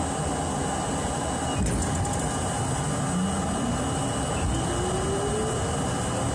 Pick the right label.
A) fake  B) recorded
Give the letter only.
B